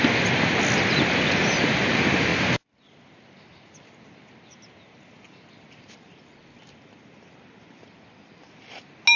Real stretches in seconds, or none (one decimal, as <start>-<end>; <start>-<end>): 0.0-9.2